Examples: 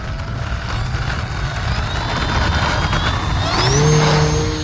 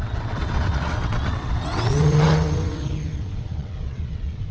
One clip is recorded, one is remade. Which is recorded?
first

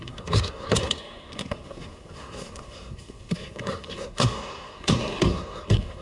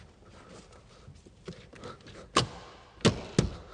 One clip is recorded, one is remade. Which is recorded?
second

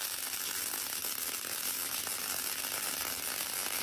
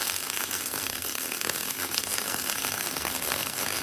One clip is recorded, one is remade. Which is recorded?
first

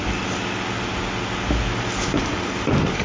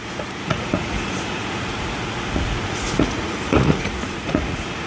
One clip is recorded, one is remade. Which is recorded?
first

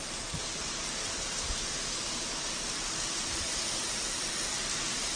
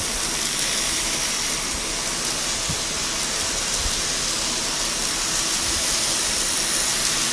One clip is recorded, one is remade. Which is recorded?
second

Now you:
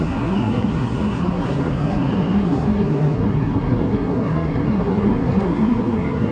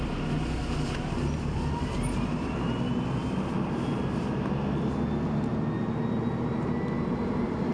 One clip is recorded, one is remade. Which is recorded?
second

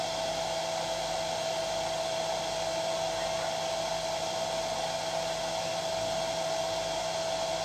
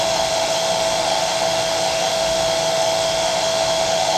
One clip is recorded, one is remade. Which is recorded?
first